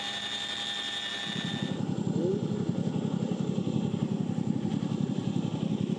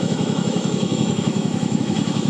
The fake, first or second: second